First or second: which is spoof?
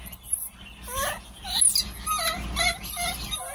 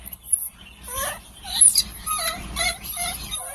second